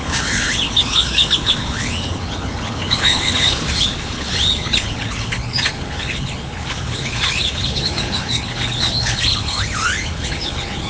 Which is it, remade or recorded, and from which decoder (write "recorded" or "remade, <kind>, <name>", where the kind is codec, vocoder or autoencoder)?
remade, codec, HILCodec